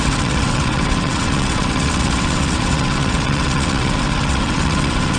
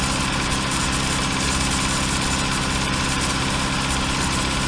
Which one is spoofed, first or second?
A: first